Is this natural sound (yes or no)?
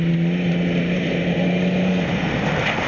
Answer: yes